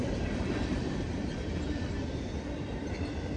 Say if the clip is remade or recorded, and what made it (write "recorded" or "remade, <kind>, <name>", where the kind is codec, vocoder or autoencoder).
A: remade, vocoder, BigVGAN v2